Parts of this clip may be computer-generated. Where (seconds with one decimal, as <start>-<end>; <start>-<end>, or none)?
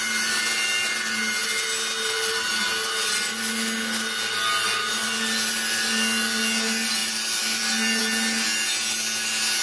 none